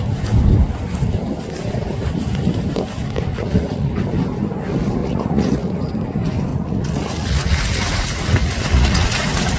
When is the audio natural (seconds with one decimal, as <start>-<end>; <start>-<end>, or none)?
0.0-3.3; 3.9-5.0; 5.9-6.5

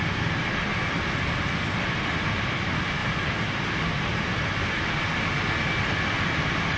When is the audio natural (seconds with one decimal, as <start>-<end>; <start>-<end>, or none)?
0.0-6.8

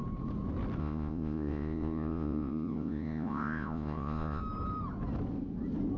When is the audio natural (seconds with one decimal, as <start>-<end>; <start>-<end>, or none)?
0.0-0.8; 4.4-6.0

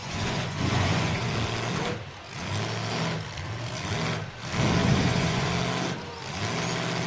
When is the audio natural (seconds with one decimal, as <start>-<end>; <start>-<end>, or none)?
1.3-4.8; 5.5-7.1

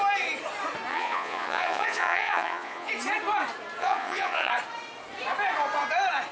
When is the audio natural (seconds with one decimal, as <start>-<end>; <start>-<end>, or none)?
0.0-0.9; 2.9-3.8; 4.5-6.3

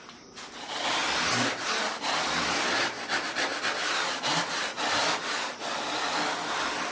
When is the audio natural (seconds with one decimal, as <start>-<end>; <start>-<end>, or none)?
0.0-6.9